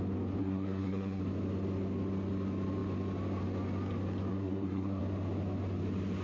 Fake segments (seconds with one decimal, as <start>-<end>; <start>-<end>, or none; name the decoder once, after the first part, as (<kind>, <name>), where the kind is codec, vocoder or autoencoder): 0.4-1.2 (codec, SNAC); 4.3-5.0